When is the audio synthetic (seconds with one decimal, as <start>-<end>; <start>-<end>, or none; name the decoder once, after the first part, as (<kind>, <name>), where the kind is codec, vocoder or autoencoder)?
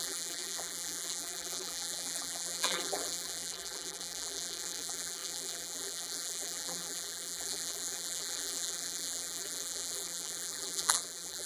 0.0-11.5 (vocoder, BigVGAN v2)